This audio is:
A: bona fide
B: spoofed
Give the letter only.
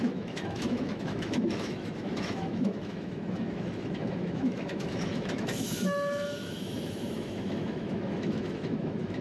B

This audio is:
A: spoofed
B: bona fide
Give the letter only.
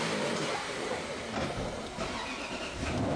B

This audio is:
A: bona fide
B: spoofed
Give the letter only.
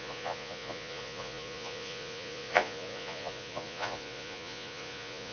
B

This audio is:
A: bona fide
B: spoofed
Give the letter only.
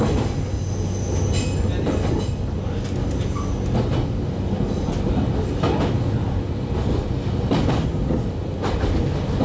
A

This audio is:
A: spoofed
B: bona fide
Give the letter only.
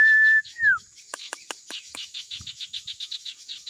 A